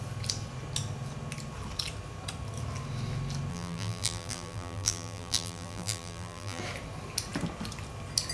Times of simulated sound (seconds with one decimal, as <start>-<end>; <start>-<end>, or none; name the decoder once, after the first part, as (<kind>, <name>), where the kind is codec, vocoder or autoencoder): 3.5-6.6 (vocoder, BigVGAN v2)